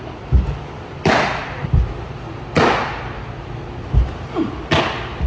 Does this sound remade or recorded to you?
recorded